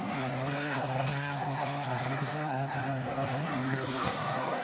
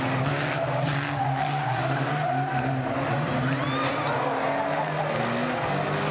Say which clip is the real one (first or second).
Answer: second